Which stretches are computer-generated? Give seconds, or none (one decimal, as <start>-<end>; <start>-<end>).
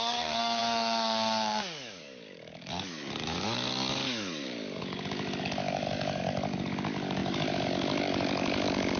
0.0-9.0